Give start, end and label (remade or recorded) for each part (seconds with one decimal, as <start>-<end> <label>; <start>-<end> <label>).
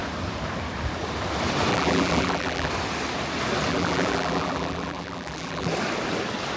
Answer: 0.0-1.7 recorded; 1.7-2.7 remade; 2.7-3.7 recorded; 3.7-5.7 remade; 5.7-6.6 recorded